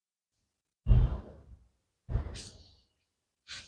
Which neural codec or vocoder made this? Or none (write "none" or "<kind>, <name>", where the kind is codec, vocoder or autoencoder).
none